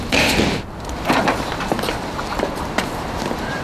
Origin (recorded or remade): recorded